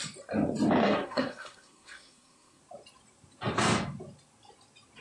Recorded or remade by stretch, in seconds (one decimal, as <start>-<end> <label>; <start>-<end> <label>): 0.0-0.8 recorded; 0.8-2.6 remade; 2.6-5.0 recorded